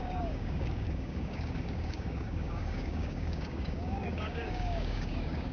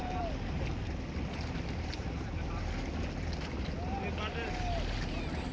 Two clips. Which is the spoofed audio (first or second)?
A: first